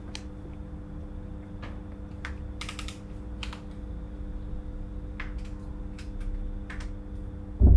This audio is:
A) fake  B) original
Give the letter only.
B